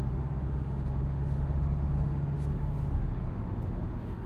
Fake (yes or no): yes